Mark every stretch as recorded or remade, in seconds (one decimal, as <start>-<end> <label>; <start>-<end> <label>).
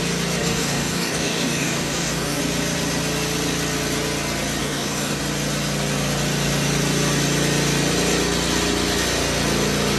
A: 0.0-0.4 recorded; 0.4-2.4 remade; 2.4-4.6 recorded; 4.6-5.2 remade; 5.2-10.0 recorded